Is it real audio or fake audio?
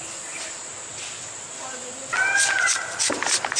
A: real